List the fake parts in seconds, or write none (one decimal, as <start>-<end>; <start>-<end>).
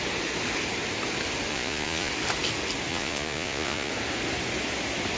1.5-2.1; 2.9-3.9